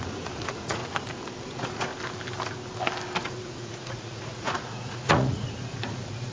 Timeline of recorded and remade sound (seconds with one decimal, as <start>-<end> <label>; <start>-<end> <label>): 0.0-0.8 remade; 0.8-1.4 recorded; 1.4-1.9 remade; 1.9-3.2 recorded; 3.2-6.3 remade